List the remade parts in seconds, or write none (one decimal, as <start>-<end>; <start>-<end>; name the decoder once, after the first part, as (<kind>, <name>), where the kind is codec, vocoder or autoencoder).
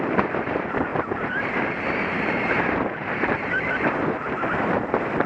0.0-5.3 (vocoder, BigVGAN v2)